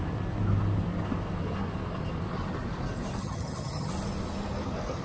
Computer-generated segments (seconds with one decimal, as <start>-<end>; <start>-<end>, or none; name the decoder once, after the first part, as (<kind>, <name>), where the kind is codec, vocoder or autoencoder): 3.2-3.9 (vocoder, HiFi-GAN)